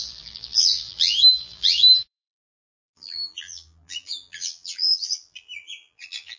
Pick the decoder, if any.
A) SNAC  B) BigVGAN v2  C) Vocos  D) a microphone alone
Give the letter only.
B